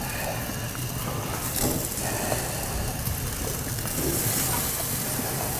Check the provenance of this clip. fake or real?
real